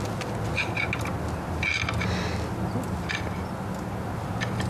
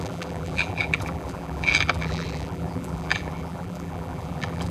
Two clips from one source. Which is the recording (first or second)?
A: first